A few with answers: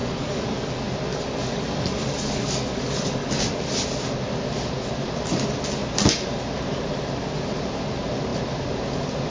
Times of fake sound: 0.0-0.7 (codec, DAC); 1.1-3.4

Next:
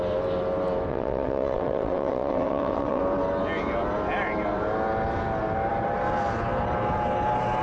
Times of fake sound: 0.9-3.0 (vocoder, WaveNeXt)